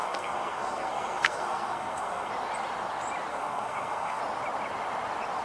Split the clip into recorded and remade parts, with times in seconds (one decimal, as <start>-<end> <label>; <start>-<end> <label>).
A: 0.0-2.3 remade; 2.3-3.3 recorded; 3.3-4.2 remade; 4.2-5.4 recorded